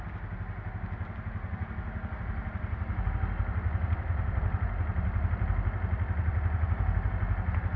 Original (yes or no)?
yes